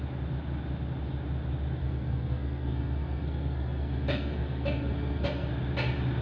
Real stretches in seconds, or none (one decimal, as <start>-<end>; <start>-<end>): 0.0-1.8; 5.5-6.2